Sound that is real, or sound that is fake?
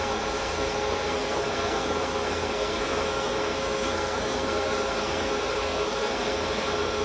fake